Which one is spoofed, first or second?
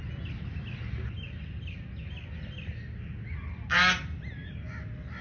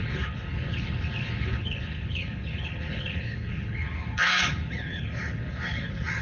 second